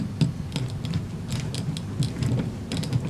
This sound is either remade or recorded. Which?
recorded